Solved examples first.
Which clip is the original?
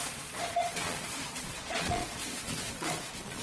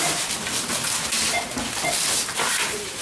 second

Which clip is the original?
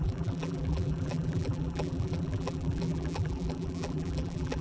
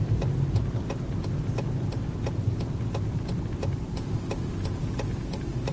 second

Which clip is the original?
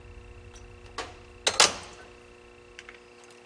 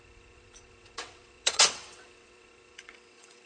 first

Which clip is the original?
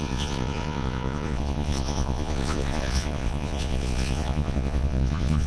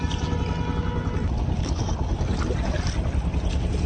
second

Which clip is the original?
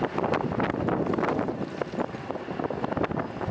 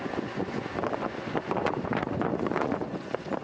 first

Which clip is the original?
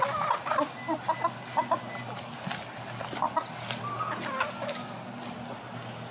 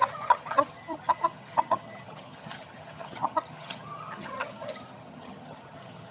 first